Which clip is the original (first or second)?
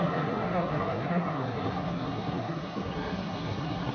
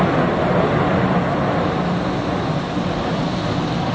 second